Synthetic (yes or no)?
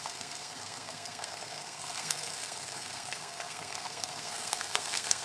yes